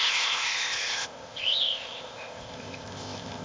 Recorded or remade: remade